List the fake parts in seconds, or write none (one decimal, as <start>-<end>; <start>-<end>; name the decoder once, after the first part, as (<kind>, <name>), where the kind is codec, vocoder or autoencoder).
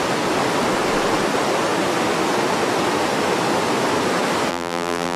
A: 4.5-5.2 (vocoder, BigVGAN v2)